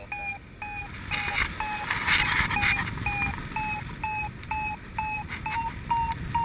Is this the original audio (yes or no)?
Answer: yes